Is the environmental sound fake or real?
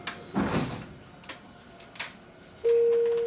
real